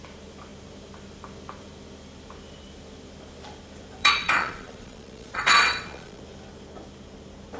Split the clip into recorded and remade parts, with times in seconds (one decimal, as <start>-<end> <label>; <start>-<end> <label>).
0.0-4.0 recorded; 4.0-6.2 remade; 6.2-7.6 recorded